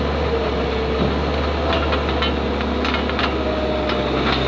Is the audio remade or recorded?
recorded